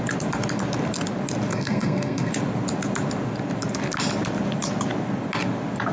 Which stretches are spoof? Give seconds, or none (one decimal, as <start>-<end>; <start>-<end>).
1.5-2.3